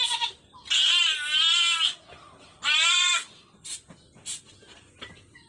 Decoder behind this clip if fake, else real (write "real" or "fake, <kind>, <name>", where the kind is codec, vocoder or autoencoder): real